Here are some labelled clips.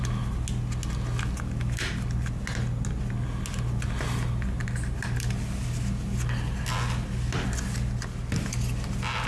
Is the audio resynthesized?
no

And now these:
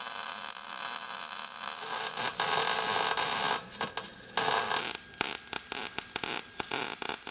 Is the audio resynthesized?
no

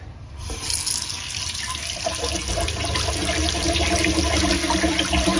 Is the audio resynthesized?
no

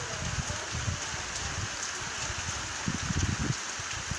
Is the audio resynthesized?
no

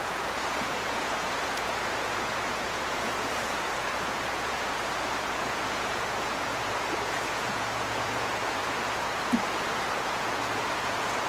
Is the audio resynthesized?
yes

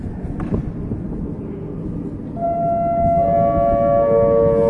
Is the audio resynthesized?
no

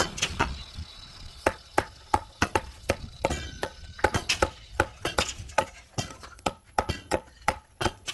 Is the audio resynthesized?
yes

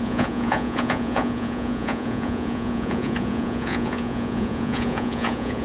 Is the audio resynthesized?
yes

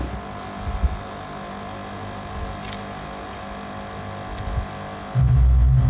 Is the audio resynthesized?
no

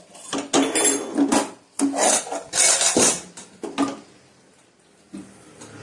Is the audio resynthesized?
no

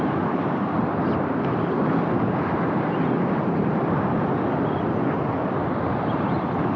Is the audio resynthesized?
no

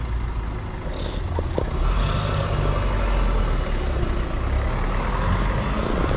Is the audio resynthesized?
no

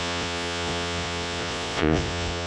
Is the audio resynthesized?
yes